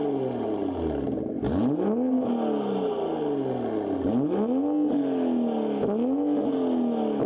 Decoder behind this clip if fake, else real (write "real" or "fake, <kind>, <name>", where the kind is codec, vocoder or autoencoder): real